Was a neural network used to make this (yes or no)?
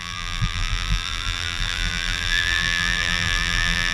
yes